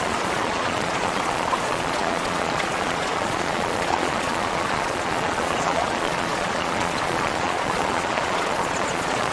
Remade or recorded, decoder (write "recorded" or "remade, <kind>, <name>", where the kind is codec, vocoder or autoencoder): remade, vocoder, Vocos